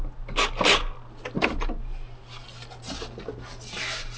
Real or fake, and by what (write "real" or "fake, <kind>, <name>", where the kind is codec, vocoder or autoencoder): real